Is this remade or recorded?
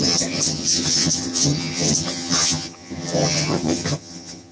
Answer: remade